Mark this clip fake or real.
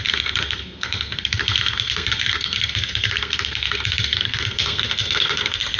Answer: fake